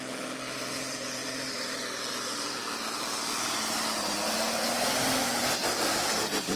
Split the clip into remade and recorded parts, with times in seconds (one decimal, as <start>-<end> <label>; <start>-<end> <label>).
0.0-1.2 recorded; 1.2-1.8 remade; 1.8-6.6 recorded